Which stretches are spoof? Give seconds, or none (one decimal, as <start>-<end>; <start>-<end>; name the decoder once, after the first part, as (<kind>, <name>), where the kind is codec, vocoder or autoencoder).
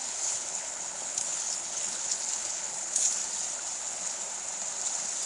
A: 0.0-3.2 (codec, HILCodec); 3.8-4.2